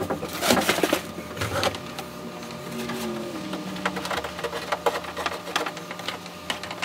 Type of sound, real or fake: real